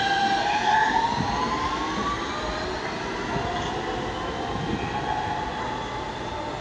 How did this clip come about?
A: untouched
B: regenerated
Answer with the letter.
A